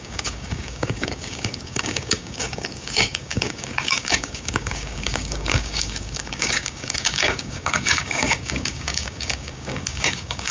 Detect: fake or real fake